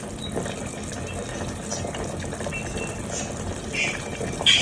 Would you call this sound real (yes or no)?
yes